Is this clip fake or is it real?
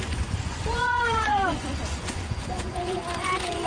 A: fake